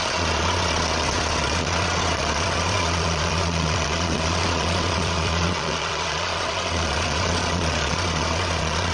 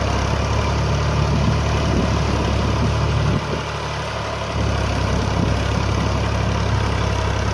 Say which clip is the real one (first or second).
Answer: second